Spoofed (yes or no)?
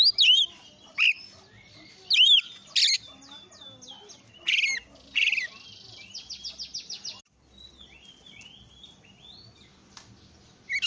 no